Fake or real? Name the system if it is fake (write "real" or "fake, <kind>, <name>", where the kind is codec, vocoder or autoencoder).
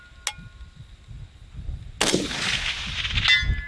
real